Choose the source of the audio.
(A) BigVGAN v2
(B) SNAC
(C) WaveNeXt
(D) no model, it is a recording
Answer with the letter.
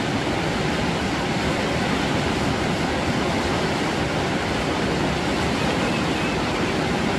D